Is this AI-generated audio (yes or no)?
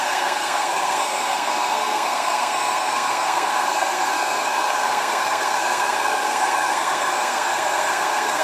yes